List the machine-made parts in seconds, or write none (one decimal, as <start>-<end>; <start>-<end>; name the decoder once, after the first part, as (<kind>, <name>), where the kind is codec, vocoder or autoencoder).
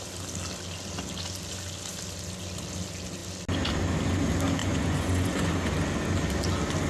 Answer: 4.6-5.5 (vocoder, Vocos)